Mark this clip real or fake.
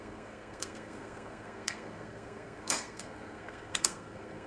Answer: fake